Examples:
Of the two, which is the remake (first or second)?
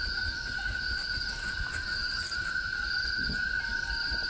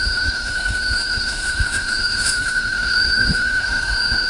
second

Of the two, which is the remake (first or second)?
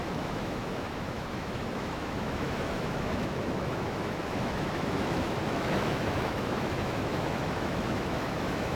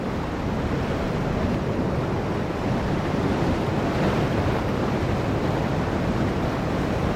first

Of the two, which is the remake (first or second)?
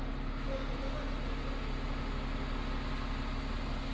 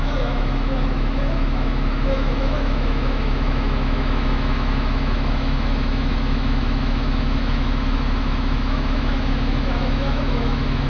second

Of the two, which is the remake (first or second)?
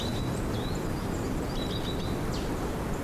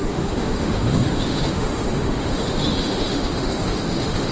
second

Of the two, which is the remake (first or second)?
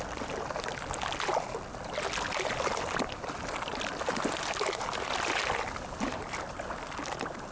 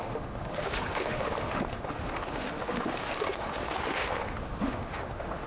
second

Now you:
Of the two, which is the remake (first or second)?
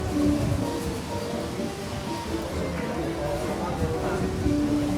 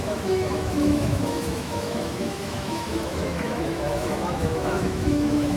second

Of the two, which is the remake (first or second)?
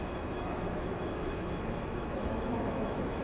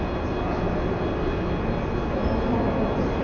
first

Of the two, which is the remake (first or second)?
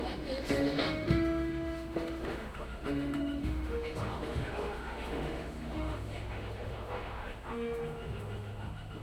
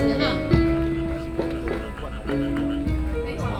first